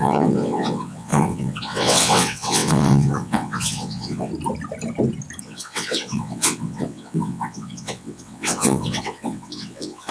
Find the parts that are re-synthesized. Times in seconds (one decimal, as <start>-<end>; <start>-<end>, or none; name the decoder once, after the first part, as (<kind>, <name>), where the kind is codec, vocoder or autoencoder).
0.0-4.3 (vocoder, WaveNeXt); 5.4-10.1